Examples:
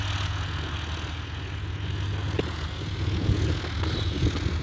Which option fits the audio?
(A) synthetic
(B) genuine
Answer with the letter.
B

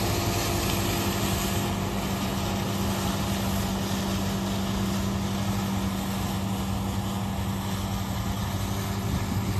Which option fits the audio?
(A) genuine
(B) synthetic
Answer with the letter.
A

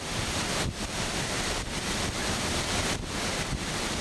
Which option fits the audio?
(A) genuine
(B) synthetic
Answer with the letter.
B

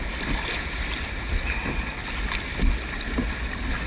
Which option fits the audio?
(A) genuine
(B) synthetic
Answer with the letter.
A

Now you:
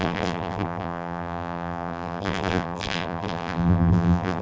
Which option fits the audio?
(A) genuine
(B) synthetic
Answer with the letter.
B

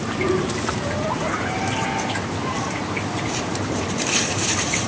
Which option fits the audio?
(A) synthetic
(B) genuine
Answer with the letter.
A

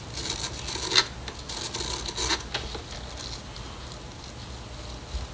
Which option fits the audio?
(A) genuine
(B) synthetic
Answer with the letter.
A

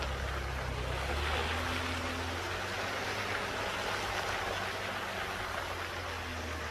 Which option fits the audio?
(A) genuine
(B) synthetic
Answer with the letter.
A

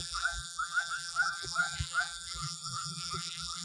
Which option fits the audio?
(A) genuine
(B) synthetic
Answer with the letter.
B